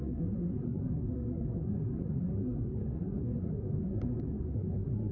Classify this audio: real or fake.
fake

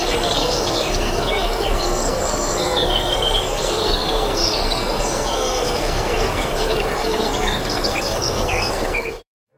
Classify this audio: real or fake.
fake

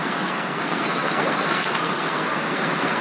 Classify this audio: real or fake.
fake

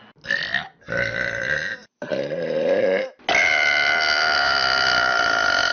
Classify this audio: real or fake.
real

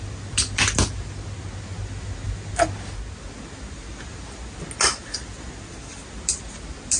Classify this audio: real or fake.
real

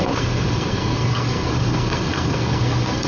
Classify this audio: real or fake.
fake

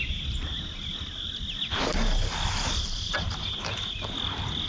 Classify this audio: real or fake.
real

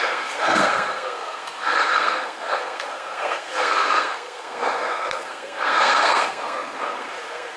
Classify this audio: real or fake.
fake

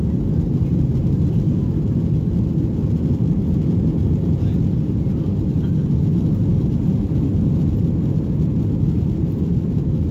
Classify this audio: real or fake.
real